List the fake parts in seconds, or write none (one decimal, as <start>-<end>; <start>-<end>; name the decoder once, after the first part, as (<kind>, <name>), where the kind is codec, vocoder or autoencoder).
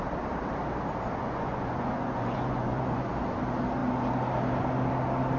1.2-3.1 (vocoder, Vocos)